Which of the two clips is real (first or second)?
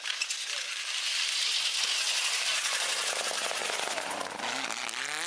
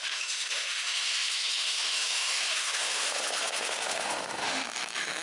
first